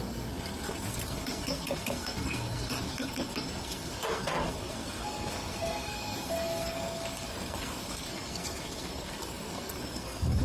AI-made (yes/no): yes